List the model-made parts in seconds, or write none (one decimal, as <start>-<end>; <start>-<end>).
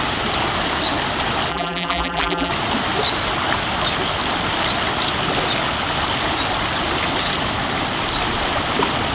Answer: 1.5-2.5